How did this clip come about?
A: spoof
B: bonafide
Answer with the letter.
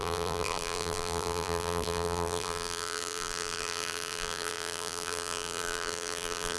A